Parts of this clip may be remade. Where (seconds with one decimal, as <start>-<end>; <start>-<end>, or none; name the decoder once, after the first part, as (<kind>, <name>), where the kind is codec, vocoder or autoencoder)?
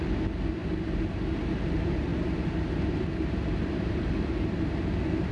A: none